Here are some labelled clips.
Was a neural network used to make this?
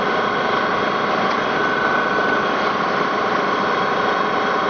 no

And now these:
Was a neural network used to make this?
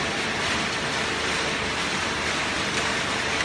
no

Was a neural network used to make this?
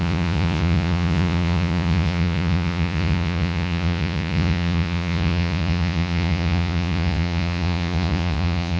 yes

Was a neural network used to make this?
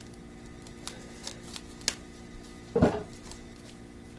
no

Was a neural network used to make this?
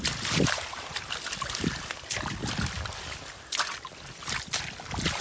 no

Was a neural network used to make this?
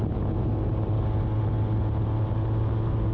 no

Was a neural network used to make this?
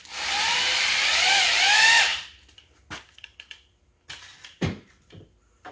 no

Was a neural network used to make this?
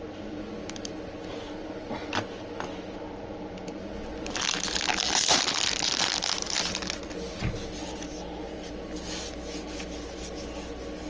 no